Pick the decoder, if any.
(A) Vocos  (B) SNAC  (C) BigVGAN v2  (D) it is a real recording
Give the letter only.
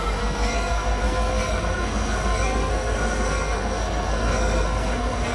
B